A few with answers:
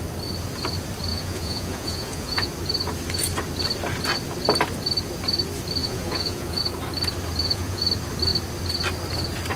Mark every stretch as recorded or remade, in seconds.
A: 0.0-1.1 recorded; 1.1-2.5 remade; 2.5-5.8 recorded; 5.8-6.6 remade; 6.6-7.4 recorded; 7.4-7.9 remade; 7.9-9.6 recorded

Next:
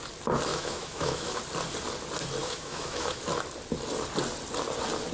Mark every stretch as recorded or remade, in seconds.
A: 0.0-0.5 recorded; 0.5-1.4 remade; 1.4-2.4 recorded; 2.4-3.2 remade; 3.2-5.1 recorded